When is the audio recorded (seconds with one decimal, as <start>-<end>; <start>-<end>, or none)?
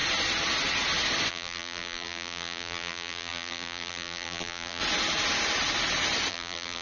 0.0-1.3; 4.8-6.3